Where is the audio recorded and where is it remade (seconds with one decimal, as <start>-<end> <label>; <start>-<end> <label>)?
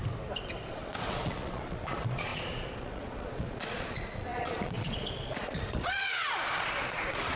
0.0-0.7 recorded; 0.7-7.4 remade